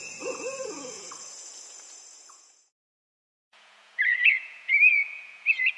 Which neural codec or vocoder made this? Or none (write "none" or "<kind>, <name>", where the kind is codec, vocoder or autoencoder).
vocoder, Vocos